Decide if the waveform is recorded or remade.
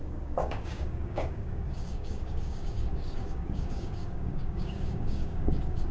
remade